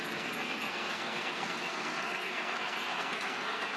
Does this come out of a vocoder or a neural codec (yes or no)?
yes